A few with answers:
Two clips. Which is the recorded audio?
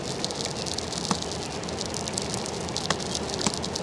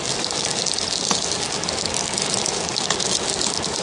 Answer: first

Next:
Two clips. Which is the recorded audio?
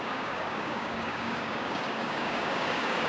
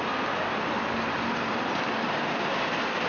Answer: second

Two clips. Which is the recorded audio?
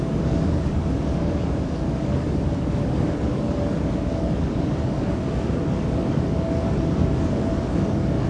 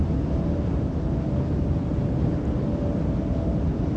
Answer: second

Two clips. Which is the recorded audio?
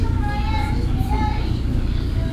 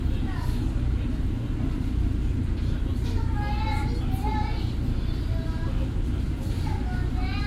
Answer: second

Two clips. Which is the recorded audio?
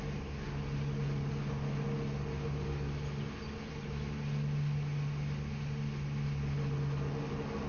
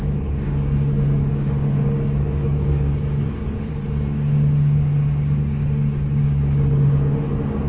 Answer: first